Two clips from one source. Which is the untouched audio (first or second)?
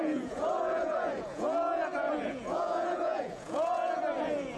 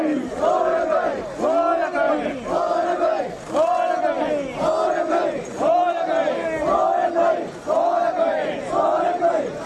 second